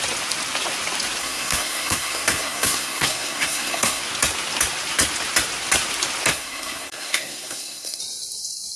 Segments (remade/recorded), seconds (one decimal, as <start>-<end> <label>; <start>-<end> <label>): 0.0-1.2 recorded; 1.2-4.0 remade; 4.0-6.3 recorded; 6.3-8.0 remade; 8.0-8.8 recorded